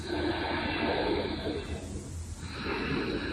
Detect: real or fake real